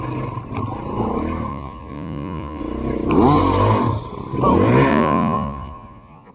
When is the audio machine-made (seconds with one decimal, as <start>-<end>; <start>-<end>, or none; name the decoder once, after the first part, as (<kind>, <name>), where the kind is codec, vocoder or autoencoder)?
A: 1.5-2.6 (vocoder, Vocos); 4.9-6.3